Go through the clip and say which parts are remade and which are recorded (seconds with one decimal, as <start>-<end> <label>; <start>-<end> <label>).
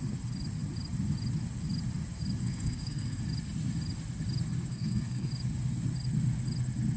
0.0-2.4 recorded; 2.4-3.2 remade; 3.2-4.7 recorded; 4.7-5.3 remade; 5.3-7.0 recorded